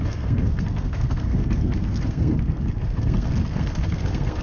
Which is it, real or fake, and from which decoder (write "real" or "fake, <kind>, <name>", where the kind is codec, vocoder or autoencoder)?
fake, codec, SNAC